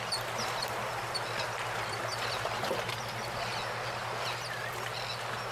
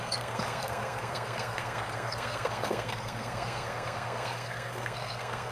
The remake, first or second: second